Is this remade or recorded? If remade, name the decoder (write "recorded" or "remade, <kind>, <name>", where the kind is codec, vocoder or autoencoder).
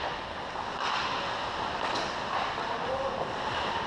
recorded